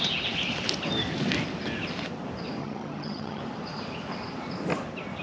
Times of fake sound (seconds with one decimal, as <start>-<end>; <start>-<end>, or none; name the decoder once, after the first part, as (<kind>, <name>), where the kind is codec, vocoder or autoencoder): 2.6-3.4 (vocoder, HiFi-GAN)